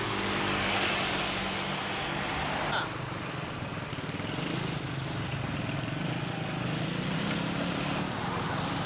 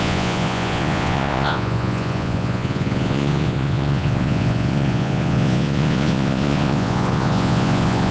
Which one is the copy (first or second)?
second